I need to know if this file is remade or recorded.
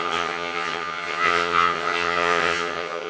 remade